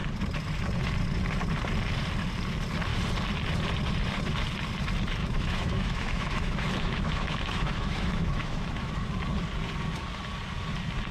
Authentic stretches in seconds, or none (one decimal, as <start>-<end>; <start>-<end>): 0.0-5.2; 8.9-11.1

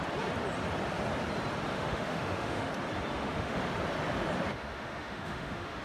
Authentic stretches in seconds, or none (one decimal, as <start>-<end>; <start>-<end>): 0.0-1.7; 2.7-3.1; 3.6-4.5

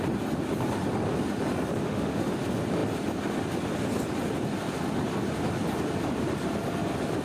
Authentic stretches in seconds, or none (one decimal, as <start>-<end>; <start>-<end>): 0.0-1.8; 2.3-7.2

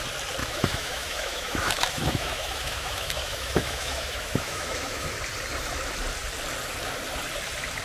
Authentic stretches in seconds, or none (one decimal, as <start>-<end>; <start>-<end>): 0.0-0.4; 5.1-7.8